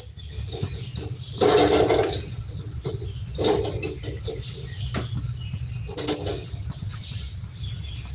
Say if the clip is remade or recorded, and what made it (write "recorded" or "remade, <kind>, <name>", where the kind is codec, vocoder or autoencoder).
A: recorded